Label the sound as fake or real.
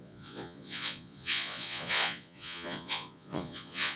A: fake